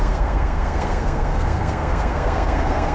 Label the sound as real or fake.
fake